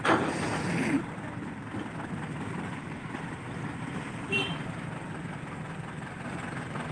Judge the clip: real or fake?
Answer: fake